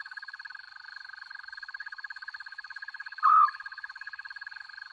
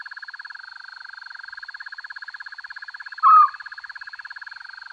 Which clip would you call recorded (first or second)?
second